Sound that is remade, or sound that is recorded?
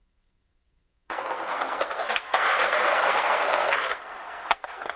remade